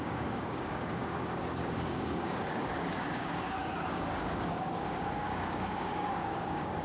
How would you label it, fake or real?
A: fake